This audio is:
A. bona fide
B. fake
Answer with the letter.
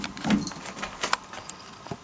A